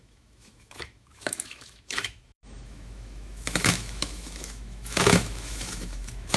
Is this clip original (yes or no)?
no